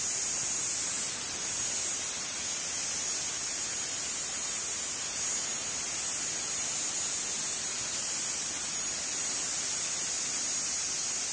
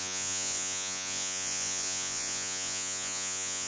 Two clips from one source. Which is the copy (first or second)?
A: second